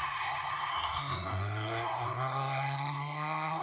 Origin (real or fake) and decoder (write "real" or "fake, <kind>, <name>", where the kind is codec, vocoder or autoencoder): fake, codec, SNAC